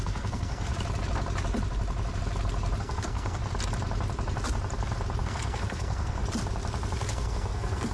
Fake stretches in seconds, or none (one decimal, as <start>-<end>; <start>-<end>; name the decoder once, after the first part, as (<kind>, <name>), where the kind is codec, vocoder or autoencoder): 0.0-0.7 (codec, SNAC); 2.8-3.4; 5.2-6.2; 7.1-7.9